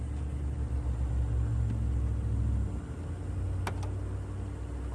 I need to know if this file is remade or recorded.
recorded